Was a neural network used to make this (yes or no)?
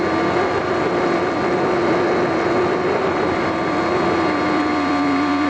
no